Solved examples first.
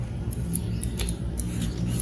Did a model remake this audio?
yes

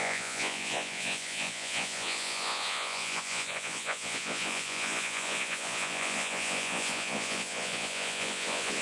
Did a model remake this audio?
yes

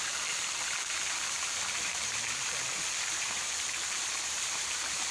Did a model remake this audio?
yes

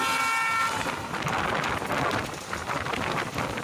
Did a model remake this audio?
no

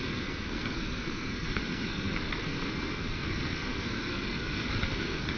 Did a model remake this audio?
yes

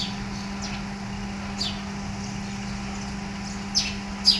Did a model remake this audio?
no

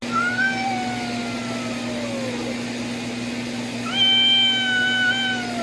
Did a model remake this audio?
no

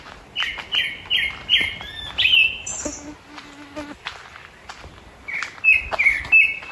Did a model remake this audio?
no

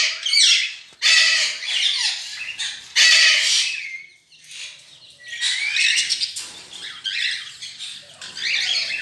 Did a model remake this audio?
no